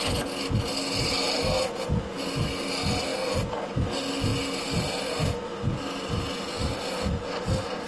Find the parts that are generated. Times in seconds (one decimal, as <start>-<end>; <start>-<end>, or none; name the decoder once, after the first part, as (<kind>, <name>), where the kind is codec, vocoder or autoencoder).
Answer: none